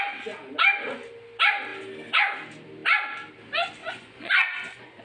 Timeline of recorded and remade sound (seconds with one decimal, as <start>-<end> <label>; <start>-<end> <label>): 0.0-3.8 recorded; 3.8-5.0 remade